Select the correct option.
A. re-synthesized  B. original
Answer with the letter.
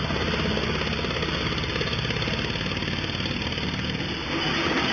B